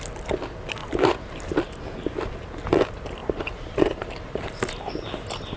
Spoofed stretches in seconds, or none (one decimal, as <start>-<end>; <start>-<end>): 0.8-1.8; 3.2-4.7